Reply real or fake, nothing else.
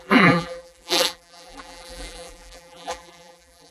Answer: fake